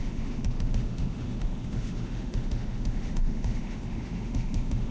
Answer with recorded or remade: remade